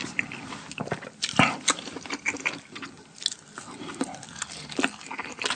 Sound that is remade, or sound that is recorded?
recorded